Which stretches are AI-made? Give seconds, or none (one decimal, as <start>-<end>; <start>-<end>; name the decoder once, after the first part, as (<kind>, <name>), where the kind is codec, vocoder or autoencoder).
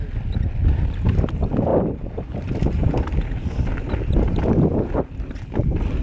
none